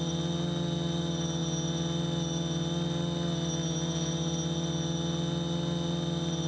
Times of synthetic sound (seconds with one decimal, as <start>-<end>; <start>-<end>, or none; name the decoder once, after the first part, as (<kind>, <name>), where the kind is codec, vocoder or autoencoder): none